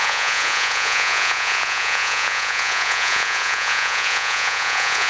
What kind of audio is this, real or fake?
fake